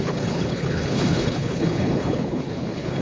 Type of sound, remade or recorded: remade